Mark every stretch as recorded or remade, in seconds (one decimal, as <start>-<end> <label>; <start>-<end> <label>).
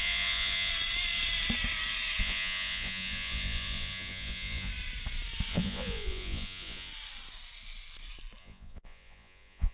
0.0-0.7 remade; 0.7-2.2 recorded; 2.2-4.7 remade; 4.7-5.5 recorded; 5.5-6.9 remade; 6.9-8.4 recorded; 8.4-9.7 remade